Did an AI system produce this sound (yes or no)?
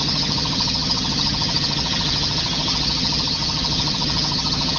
yes